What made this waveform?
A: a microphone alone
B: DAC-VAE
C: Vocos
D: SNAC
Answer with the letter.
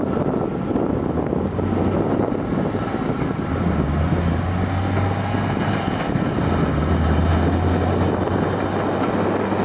A